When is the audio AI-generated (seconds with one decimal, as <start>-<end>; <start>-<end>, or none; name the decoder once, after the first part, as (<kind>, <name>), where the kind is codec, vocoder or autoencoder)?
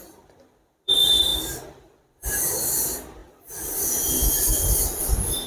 none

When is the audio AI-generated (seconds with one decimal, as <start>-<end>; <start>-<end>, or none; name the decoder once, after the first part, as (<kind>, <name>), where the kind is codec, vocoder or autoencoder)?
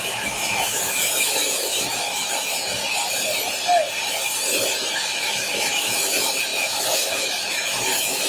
0.0-2.8 (autoencoder, DAC-VAE); 4.9-8.3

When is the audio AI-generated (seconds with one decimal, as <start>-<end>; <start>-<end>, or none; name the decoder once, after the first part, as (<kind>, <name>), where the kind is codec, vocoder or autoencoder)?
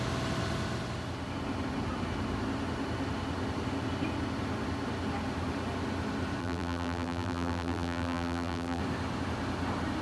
6.4-8.8 (vocoder, BigVGAN v2)